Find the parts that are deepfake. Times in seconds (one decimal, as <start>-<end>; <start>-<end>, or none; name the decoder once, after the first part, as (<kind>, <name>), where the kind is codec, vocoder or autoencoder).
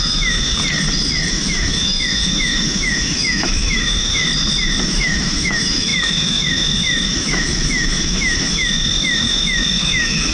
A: 0.0-0.6 (autoencoder, DAC-VAE); 1.3-4.2; 4.8-10.3